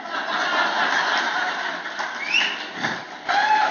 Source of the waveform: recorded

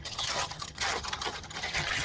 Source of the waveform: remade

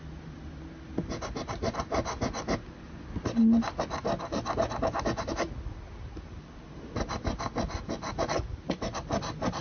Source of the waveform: recorded